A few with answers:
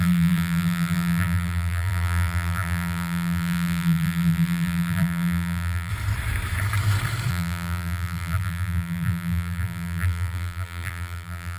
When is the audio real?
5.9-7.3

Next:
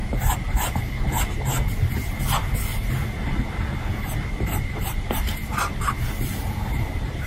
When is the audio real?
0.8-2.7